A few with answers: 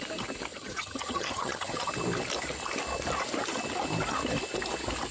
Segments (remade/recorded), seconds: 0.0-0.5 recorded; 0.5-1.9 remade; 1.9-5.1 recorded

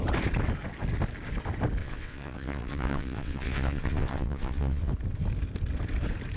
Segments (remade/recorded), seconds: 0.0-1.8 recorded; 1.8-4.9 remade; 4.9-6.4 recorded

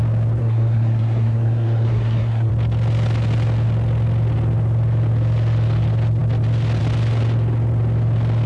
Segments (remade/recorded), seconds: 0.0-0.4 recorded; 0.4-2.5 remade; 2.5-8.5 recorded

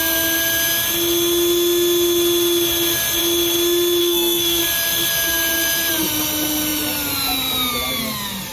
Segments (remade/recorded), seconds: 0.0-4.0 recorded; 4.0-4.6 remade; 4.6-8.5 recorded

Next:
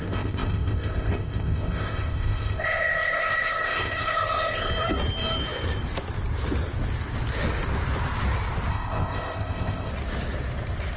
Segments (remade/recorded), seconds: 0.0-4.7 remade; 4.7-8.7 recorded; 8.7-9.9 remade; 9.9-11.0 recorded

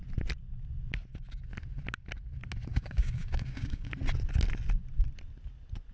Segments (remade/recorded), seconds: 0.0-2.7 recorded; 2.7-3.9 remade; 3.9-5.9 recorded

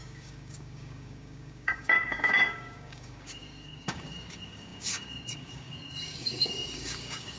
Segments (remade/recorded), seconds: 0.0-7.4 remade